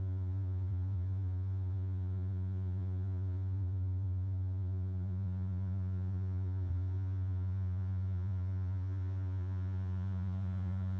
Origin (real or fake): fake